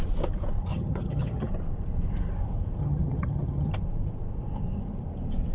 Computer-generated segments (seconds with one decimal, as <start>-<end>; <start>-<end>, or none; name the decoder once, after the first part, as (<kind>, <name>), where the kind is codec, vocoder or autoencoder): 0.7-1.5 (vocoder, HiFi-GAN); 2.8-3.7